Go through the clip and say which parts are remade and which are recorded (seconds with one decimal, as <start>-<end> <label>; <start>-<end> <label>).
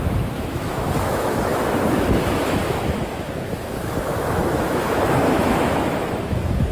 0.0-6.7 remade